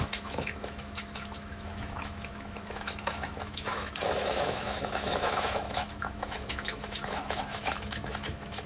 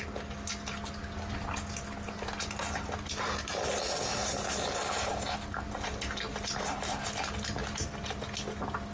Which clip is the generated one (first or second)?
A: first